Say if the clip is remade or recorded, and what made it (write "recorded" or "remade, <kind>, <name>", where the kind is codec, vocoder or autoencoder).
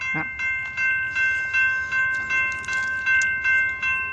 recorded